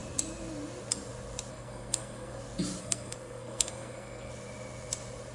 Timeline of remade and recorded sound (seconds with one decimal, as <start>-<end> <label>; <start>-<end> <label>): 0.0-1.5 recorded; 1.5-2.4 remade; 2.4-2.8 recorded; 2.8-4.3 remade; 4.3-5.3 recorded